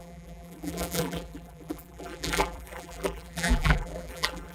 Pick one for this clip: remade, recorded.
remade